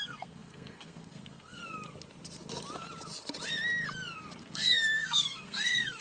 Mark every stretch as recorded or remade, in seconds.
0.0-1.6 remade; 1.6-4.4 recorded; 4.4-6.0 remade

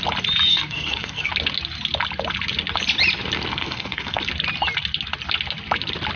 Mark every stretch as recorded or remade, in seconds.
0.0-0.5 recorded; 0.5-1.3 remade; 1.3-3.5 recorded; 3.5-4.2 remade; 4.2-6.2 recorded

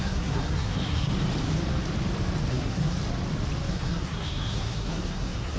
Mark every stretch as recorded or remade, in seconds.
0.0-1.1 remade; 1.1-2.5 recorded; 2.5-3.0 remade; 3.0-3.7 recorded; 3.7-5.6 remade

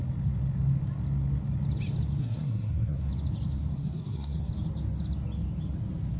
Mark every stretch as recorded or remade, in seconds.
0.0-2.2 recorded; 2.2-3.1 remade; 3.1-3.7 recorded; 3.7-4.5 remade; 4.5-6.2 recorded

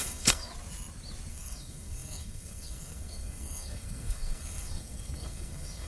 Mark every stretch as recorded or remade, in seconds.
0.0-0.5 remade; 0.5-1.3 recorded; 1.3-5.9 remade